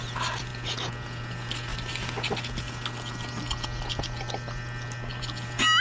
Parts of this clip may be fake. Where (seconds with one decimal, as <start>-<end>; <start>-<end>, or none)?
none